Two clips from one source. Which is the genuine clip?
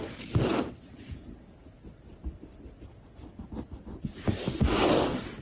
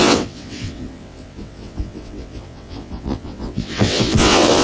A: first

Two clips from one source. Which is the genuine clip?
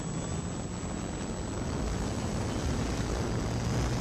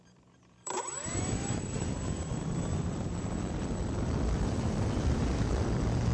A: first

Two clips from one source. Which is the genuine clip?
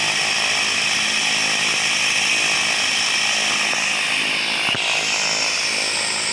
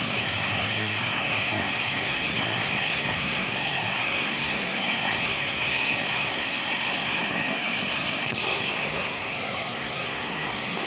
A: first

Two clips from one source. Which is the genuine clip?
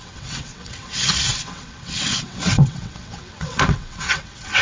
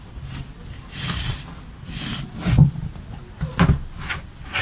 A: second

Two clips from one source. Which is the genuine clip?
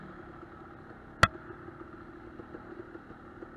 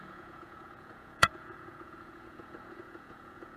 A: first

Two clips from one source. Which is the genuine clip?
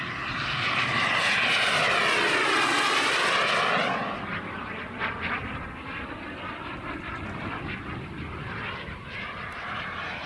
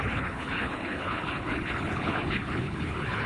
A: first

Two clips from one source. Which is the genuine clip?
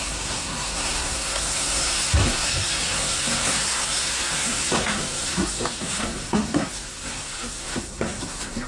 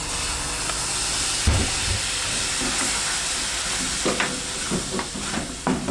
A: second